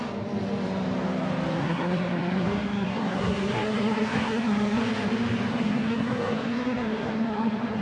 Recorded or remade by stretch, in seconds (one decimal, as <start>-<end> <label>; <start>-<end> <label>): 0.0-1.6 recorded; 1.6-4.8 remade; 4.8-5.5 recorded; 5.5-7.8 remade